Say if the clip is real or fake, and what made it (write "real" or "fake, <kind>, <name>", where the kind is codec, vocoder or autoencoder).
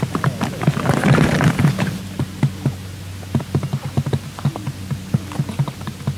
real